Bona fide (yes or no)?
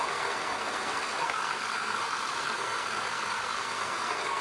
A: no